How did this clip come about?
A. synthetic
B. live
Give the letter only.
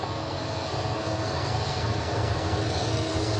A